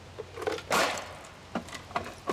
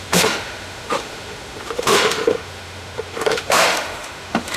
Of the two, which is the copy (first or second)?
second